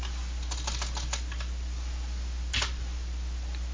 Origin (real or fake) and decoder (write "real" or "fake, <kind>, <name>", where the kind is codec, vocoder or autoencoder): real